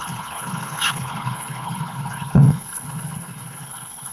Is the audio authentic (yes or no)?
no